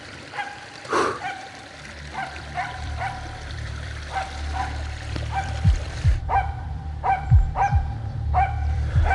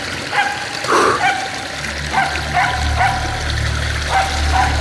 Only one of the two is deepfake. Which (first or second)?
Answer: first